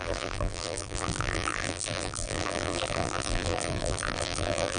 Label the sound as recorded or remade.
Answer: remade